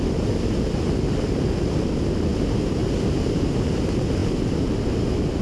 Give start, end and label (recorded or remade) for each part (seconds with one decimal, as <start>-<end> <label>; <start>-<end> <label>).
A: 0.0-5.4 recorded